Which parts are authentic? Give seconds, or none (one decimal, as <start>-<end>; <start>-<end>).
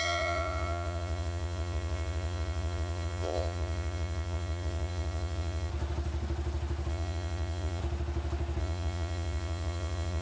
5.7-6.9; 7.8-8.6